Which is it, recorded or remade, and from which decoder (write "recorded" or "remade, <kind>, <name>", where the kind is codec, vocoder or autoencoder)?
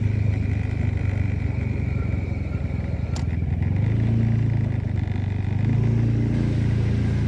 recorded